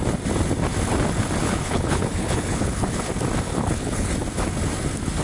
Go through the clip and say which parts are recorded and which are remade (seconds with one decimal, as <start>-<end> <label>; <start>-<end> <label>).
0.0-1.4 recorded; 1.4-3.1 remade; 3.1-3.5 recorded; 3.5-4.1 remade; 4.1-5.2 recorded